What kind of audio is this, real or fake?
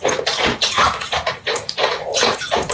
fake